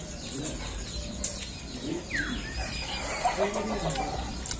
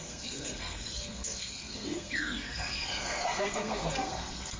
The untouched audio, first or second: first